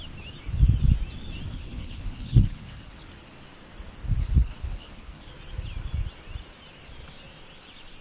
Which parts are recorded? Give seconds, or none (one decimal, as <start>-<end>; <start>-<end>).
0.0-1.5; 3.0-4.2; 5.3-8.0